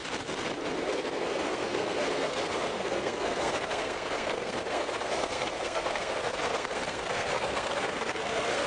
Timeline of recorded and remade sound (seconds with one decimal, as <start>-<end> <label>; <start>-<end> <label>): 0.0-0.8 recorded; 0.8-8.7 remade